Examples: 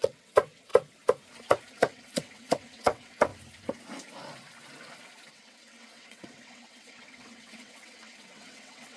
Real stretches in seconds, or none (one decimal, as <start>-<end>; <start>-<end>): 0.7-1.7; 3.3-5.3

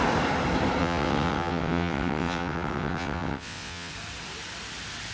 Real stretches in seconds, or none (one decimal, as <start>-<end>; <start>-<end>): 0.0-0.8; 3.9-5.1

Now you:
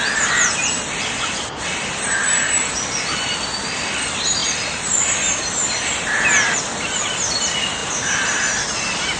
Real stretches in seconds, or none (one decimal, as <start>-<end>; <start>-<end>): 0.0-9.2

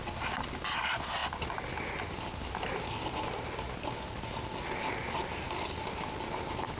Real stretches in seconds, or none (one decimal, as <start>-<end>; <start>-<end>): 0.0-6.8

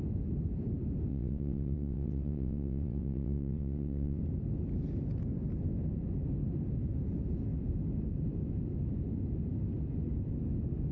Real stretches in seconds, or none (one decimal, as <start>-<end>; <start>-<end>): 0.0-1.1; 4.2-10.9

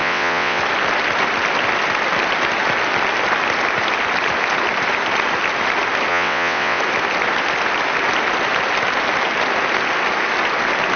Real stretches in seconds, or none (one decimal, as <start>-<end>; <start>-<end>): 0.6-6.1; 6.8-11.0

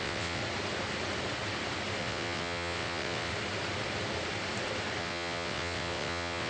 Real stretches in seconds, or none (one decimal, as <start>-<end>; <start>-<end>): 0.4-2.0; 3.3-5.0

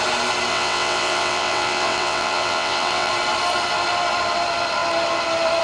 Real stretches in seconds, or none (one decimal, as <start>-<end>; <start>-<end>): 0.0-0.5; 3.1-5.6